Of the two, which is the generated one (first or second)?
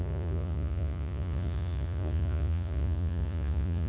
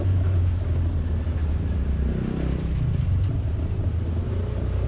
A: first